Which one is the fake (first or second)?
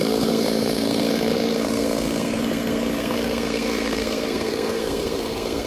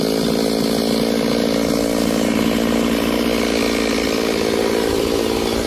first